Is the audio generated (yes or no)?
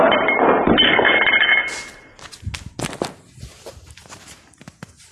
no